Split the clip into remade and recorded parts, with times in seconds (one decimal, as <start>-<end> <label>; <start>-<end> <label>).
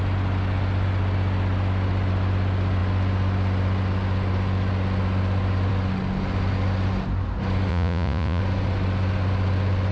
0.0-7.7 recorded; 7.7-8.4 remade; 8.4-9.9 recorded